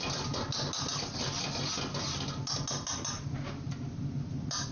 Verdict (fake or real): real